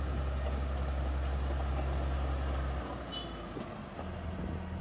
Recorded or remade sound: recorded